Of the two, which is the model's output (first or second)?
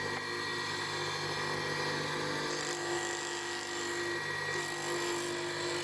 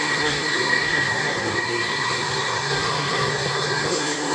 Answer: second